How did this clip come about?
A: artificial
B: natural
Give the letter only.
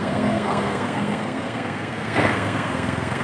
A